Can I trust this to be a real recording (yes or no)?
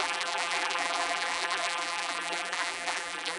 no